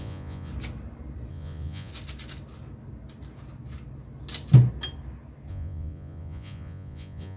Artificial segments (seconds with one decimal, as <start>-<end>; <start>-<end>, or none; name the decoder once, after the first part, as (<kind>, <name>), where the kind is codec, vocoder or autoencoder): 0.0-0.5 (vocoder, Vocos); 1.3-1.9; 5.5-7.4